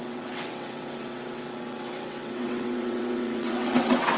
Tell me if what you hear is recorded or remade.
remade